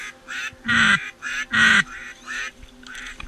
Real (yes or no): yes